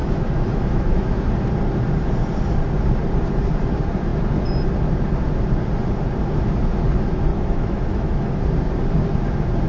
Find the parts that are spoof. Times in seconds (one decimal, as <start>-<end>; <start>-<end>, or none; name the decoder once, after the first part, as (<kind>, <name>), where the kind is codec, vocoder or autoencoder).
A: 0.0-1.1 (autoencoder, DAC-VAE); 7.3-8.4